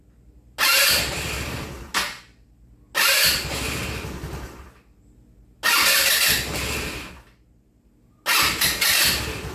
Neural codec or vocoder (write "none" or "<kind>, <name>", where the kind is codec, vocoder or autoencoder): none